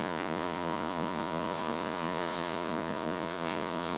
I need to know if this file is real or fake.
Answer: fake